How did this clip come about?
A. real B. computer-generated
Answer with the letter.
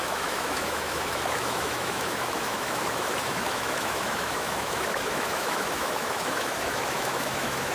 B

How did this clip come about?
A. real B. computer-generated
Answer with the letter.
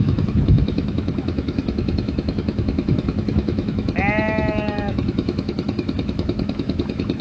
B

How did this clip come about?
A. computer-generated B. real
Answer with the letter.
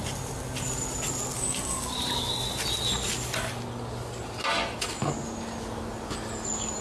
B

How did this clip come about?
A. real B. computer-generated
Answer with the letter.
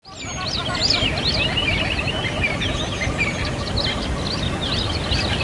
A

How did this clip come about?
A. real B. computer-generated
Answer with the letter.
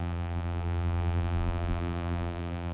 B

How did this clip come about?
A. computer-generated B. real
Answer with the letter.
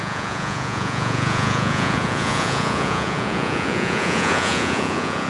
A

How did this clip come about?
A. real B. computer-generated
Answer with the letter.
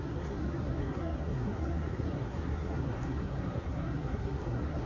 B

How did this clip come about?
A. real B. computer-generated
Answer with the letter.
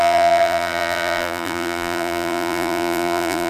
B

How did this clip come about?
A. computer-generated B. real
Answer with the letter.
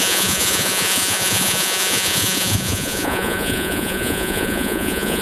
A